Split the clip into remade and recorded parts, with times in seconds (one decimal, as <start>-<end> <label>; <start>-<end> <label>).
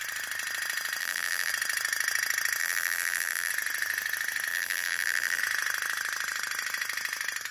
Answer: 0.0-1.0 recorded; 1.0-1.5 remade; 1.5-2.6 recorded; 2.6-3.5 remade; 3.5-4.5 recorded; 4.5-5.4 remade; 5.4-7.5 recorded